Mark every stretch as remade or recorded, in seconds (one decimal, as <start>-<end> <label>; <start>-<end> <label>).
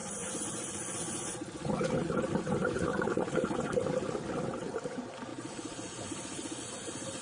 0.0-1.9 remade; 1.9-2.9 recorded; 2.9-3.5 remade; 3.5-7.2 recorded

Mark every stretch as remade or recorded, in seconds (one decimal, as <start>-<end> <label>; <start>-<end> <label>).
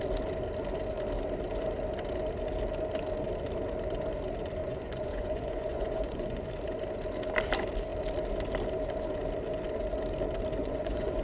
0.0-4.6 recorded; 4.6-6.4 remade; 6.4-10.6 recorded; 10.6-11.2 remade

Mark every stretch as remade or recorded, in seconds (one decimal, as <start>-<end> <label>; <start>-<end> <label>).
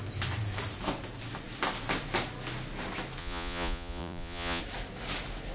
0.0-3.2 recorded; 3.2-4.6 remade; 4.6-5.5 recorded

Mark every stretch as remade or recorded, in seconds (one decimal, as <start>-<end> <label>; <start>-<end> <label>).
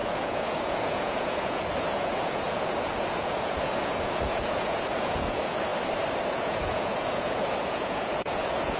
0.0-5.7 remade; 5.7-6.3 recorded; 6.3-8.8 remade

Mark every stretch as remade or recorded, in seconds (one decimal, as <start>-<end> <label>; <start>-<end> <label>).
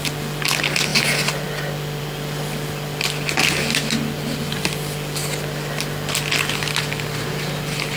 0.0-8.0 recorded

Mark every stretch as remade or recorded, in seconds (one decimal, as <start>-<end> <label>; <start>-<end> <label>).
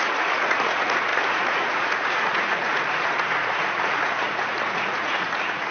0.0-5.7 remade